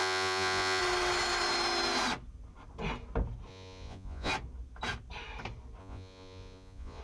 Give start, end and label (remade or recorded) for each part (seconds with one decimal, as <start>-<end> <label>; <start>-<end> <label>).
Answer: 0.0-0.8 remade; 0.8-3.5 recorded; 3.5-4.3 remade; 4.3-5.8 recorded; 5.8-7.0 remade